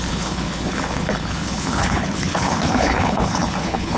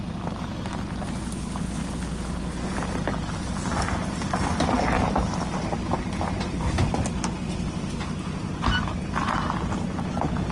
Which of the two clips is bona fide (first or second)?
second